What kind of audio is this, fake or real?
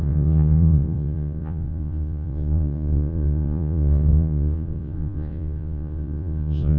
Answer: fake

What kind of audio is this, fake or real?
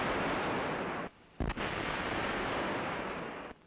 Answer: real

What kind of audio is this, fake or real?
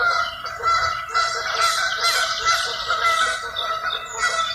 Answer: real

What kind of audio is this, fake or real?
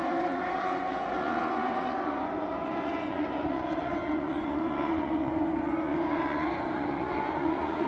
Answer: fake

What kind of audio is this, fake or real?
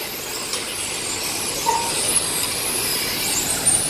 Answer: real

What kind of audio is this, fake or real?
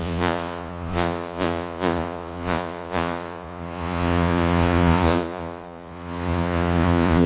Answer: fake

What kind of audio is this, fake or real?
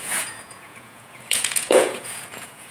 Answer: fake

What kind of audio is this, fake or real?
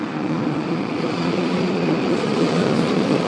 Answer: fake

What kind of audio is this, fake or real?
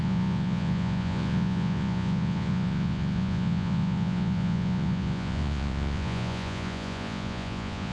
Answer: fake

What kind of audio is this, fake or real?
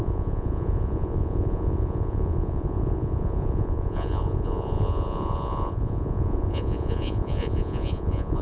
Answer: fake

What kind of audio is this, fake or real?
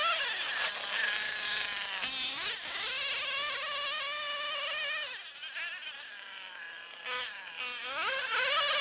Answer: real